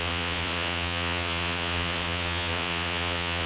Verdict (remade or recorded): remade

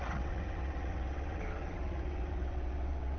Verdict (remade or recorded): remade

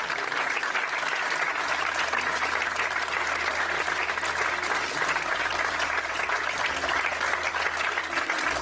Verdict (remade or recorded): recorded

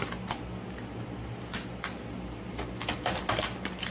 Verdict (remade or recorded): recorded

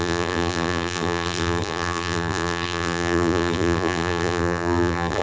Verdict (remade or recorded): remade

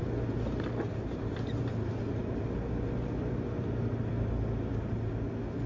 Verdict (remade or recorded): recorded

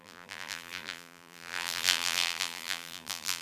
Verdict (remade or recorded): remade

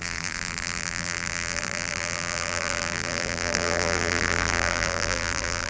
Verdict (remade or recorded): remade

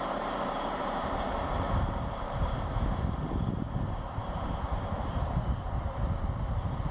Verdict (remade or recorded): remade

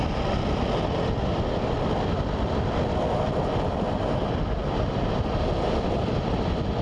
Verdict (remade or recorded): recorded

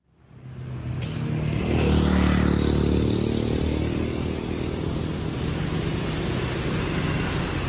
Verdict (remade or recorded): recorded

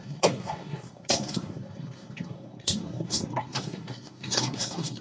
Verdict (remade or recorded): remade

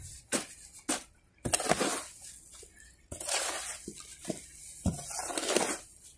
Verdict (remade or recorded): recorded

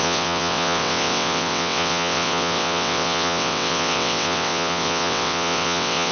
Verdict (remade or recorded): remade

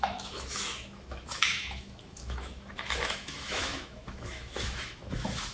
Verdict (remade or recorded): remade